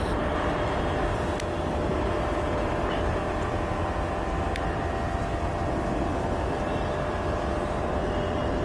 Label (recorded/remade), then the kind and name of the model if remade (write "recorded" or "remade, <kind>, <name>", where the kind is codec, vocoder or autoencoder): recorded